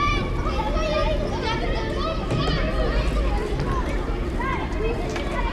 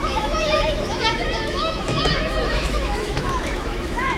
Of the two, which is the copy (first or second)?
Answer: second